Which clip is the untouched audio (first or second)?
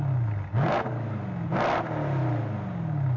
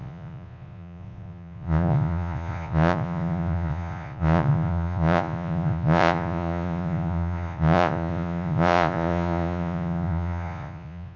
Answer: first